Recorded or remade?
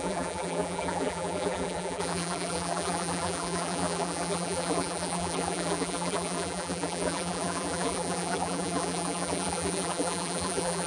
remade